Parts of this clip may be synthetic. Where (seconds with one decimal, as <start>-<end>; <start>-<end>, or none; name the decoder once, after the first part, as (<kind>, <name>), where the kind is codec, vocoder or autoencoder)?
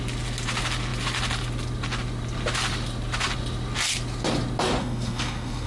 4.8-5.7 (codec, SNAC)